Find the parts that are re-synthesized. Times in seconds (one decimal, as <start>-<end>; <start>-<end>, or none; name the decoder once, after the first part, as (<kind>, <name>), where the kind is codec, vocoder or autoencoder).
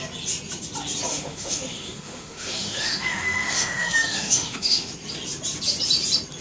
1.1-4.9 (autoencoder, DAC-VAE)